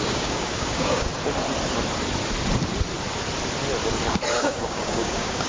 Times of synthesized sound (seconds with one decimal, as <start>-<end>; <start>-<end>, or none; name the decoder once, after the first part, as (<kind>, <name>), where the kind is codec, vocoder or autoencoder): 0.0-1.1 (codec, DAC); 4.4-5.5